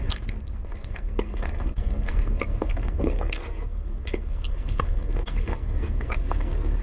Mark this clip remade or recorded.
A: remade